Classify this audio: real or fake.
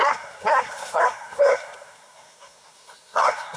fake